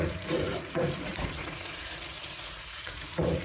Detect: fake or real fake